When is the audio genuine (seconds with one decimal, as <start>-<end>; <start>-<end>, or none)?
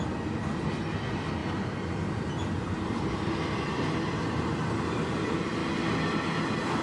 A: 0.0-1.4; 4.1-6.8